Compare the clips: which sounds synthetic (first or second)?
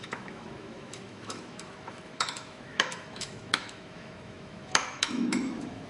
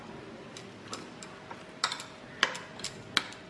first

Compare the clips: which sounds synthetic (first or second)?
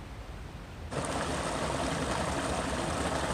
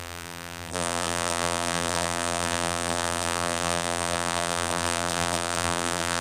second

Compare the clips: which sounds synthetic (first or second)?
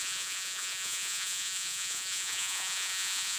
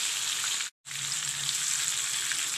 first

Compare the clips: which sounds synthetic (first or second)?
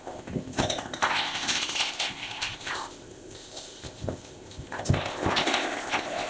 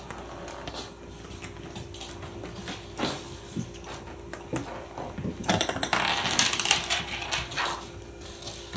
first